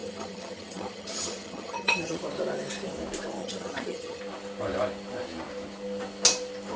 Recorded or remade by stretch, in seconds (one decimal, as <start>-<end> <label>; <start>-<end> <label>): 0.0-2.2 remade; 2.2-3.4 recorded; 3.4-4.2 remade; 4.2-6.8 recorded